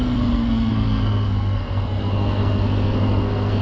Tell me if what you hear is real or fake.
fake